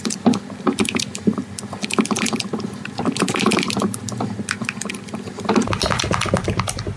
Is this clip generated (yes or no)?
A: no